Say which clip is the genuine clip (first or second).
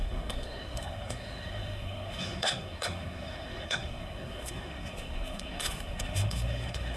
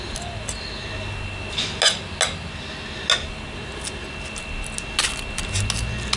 second